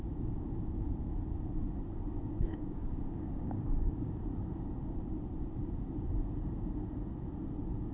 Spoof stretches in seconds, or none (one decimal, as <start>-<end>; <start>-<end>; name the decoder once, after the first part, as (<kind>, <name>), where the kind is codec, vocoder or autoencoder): 2.5-4.2 (codec, DAC)